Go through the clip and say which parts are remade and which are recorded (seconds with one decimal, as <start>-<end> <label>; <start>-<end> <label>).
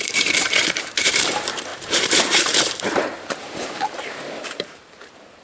0.0-5.4 remade